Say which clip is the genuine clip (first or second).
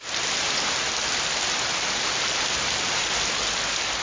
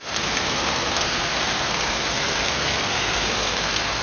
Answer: first